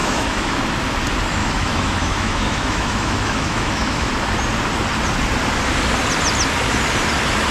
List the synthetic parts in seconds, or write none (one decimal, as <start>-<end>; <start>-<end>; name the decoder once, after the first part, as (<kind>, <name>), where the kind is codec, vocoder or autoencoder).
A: 0.0-0.6 (autoencoder, DAC-VAE); 1.4-4.1